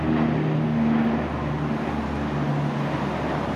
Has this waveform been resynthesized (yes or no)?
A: no